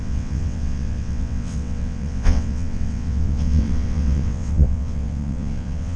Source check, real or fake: fake